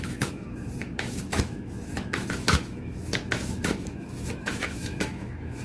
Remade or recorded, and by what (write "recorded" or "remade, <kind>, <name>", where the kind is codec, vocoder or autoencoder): remade, autoencoder, DAC-VAE